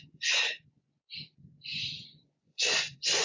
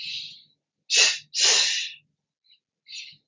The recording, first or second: second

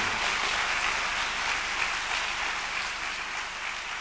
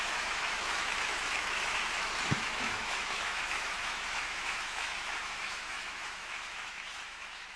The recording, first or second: first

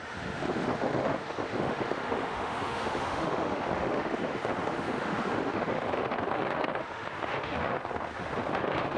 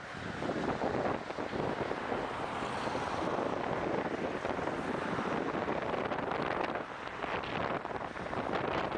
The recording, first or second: second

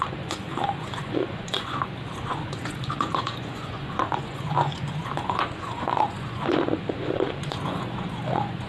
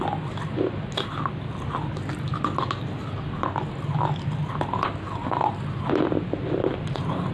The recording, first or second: second